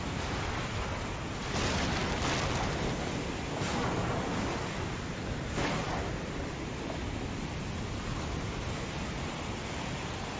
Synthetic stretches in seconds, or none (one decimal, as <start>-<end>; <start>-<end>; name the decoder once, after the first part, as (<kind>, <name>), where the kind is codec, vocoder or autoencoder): none

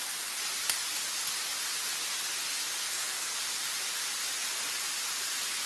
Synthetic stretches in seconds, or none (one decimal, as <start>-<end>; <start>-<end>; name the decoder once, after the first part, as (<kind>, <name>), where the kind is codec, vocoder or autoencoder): 2.8-3.3 (codec, SNAC)

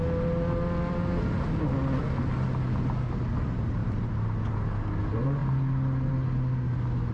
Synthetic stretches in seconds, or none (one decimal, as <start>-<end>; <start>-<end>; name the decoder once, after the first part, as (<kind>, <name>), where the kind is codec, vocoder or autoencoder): 3.8-4.4 (vocoder, BigVGAN v2)

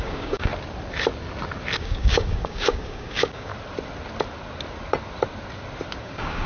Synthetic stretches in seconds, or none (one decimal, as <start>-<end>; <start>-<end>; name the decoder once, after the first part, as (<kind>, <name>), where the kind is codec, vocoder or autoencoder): 0.0-0.5 (codec, DAC); 1.8-3.5; 6.0-6.5